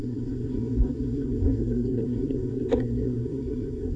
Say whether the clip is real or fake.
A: fake